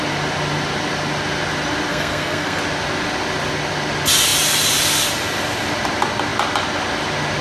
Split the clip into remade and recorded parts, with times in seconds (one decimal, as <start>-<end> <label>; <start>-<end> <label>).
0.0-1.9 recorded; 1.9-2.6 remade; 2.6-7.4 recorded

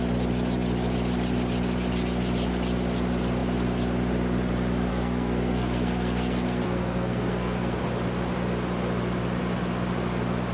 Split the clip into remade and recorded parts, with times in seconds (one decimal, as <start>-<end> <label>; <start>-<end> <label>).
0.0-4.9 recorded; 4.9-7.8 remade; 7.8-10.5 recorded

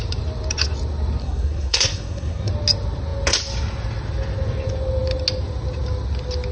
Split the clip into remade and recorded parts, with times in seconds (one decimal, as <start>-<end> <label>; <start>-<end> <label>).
0.0-1.2 recorded; 1.2-2.5 remade; 2.5-6.5 recorded

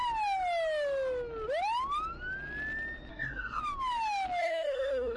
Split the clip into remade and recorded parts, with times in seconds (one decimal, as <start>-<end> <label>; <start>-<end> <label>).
0.0-3.1 recorded; 3.1-3.6 remade; 3.6-4.4 recorded; 4.4-5.2 remade

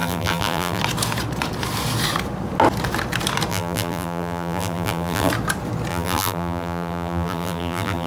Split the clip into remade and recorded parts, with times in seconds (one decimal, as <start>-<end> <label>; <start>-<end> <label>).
0.0-0.8 remade; 0.8-3.5 recorded; 3.5-5.3 remade; 5.3-5.9 recorded; 5.9-8.1 remade

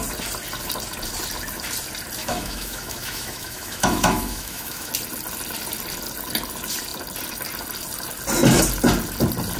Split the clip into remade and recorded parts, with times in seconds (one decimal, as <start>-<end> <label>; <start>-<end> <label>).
0.0-2.2 recorded; 2.2-4.9 remade; 4.9-9.6 recorded

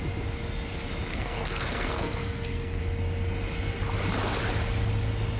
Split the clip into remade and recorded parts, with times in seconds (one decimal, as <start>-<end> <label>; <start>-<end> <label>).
0.0-1.1 recorded; 1.1-2.8 remade; 2.8-5.4 recorded

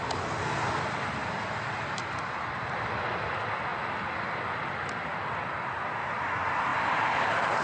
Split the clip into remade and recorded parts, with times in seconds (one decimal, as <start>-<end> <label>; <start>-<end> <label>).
0.0-1.2 recorded; 1.2-2.8 remade; 2.8-6.7 recorded; 6.7-7.6 remade